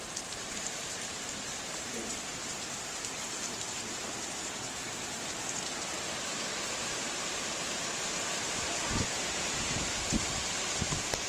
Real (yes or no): no